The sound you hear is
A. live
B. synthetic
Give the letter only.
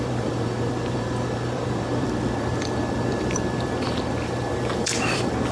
B